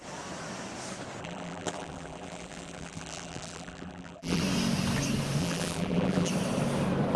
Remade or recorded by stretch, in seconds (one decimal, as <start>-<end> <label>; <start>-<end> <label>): 0.0-1.2 recorded; 1.2-4.4 remade; 4.4-5.4 recorded; 5.4-6.3 remade; 6.3-7.2 recorded